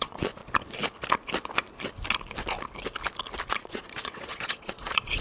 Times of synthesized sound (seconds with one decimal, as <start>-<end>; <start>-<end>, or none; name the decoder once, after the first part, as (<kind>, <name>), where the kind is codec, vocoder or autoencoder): 0.0-0.4 (vocoder, Vocos); 3.5-5.2